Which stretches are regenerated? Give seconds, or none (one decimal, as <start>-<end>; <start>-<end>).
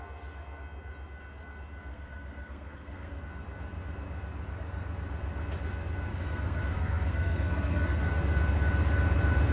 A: 1.9-3.2; 6.1-8.0